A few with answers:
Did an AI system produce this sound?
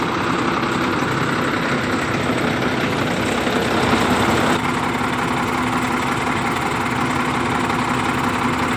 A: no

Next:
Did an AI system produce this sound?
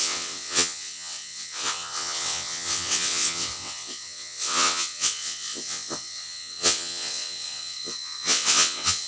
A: yes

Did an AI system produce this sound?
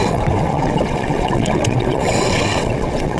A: yes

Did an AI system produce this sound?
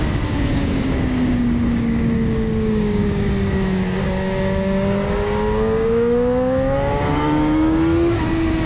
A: yes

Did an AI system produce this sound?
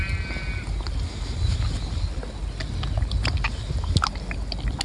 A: no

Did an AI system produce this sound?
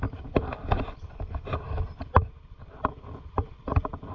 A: yes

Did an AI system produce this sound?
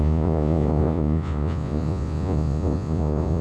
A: yes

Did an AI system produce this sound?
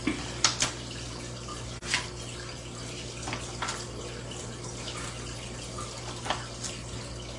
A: no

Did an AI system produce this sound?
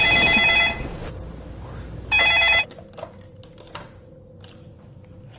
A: no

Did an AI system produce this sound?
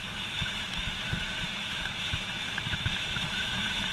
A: yes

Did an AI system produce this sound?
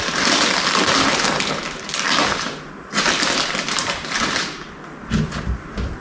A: no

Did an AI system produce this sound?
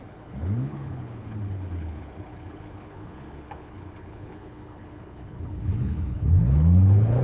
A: yes